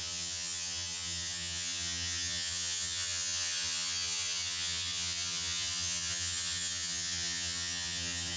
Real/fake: fake